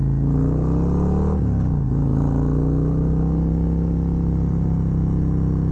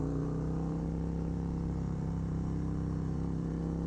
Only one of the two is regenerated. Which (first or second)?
second